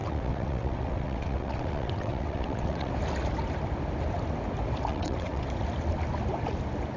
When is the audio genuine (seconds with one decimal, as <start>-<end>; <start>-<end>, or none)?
2.9-4.9; 5.4-7.0